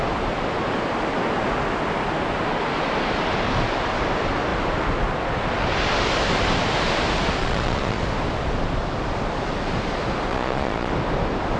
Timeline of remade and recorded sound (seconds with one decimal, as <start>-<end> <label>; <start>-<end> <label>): 0.0-7.4 recorded; 7.4-8.0 remade; 8.0-10.3 recorded; 10.3-10.9 remade; 10.9-11.6 recorded